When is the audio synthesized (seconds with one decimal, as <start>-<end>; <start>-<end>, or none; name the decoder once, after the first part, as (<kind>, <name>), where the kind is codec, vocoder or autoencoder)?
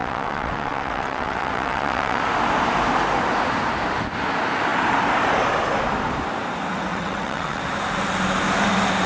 0.0-2.2 (vocoder, WaveNeXt); 6.9-7.6